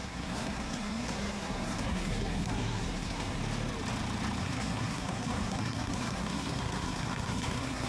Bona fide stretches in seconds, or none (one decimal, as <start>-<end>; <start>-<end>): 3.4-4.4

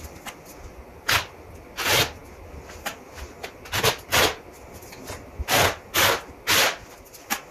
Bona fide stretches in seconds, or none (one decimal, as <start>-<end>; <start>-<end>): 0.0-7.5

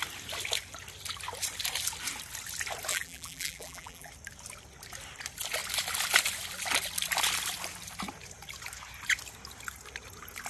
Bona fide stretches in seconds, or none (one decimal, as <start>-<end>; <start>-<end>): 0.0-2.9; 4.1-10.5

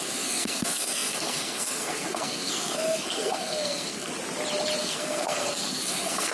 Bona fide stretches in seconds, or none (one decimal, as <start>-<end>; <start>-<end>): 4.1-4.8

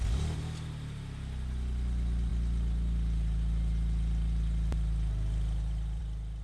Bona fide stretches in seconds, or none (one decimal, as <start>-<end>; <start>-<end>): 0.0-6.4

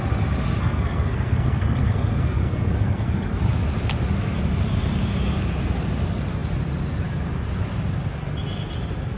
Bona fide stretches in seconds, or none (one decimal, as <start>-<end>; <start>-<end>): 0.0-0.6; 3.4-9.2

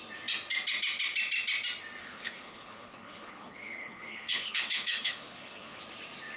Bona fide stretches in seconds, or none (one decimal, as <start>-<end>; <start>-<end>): 0.0-2.0; 5.8-6.4